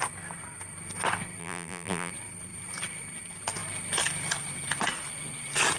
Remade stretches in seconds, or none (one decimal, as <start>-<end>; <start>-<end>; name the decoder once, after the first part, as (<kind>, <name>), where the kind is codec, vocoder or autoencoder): 1.4-2.1 (vocoder, BigVGAN v2)